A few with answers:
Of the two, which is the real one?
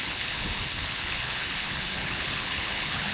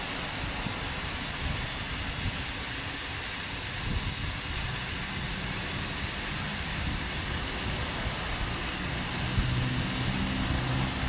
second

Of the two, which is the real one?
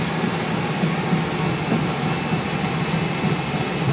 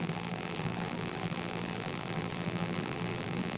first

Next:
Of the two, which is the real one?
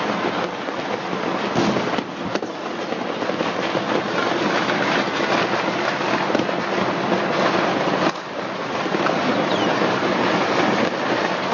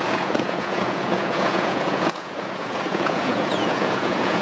first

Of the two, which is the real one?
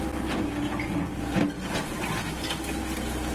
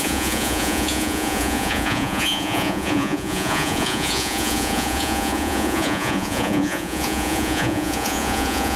first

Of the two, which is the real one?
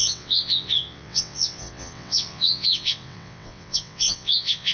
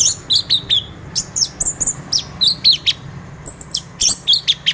second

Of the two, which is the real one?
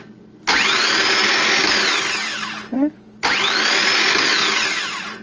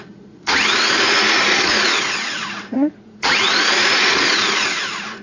first